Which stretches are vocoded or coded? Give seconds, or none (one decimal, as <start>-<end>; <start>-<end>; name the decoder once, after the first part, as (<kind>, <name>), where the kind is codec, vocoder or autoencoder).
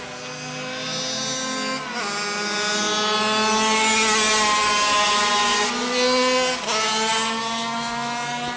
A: none